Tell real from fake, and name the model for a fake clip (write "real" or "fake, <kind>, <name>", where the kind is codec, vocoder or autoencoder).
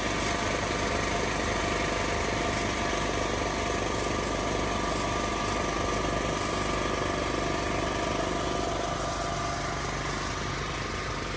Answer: real